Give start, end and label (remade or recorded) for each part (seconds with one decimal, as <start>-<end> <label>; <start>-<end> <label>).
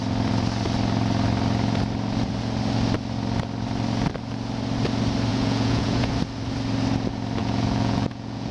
0.0-5.3 recorded; 5.3-6.1 remade; 6.1-7.4 recorded; 7.4-8.5 remade